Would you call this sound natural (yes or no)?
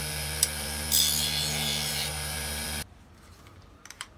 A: no